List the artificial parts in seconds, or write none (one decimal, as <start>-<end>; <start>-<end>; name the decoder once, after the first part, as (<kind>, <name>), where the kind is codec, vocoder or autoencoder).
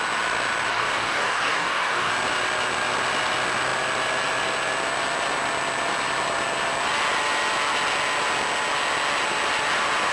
0.7-2.1 (codec, DAC)